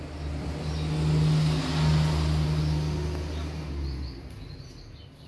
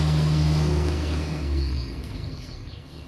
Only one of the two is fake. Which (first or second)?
second